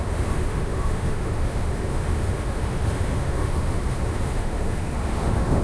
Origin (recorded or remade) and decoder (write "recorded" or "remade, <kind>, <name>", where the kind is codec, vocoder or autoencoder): remade, autoencoder, DAC-VAE